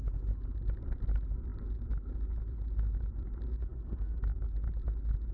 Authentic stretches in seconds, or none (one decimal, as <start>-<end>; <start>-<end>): 0.0-3.6; 4.2-5.3